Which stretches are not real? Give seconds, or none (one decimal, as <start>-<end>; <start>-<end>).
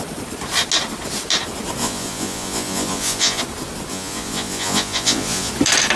1.8-3.4; 3.9-5.5